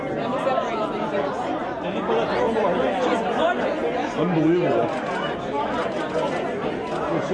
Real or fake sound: real